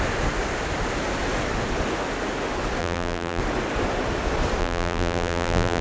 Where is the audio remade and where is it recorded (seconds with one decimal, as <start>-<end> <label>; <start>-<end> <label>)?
0.0-2.8 recorded; 2.8-3.4 remade; 3.4-4.6 recorded; 4.6-5.8 remade